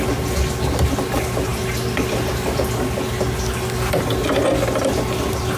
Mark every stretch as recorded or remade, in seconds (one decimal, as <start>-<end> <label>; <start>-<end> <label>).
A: 0.0-5.6 recorded